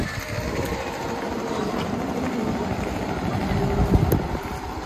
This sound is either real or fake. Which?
real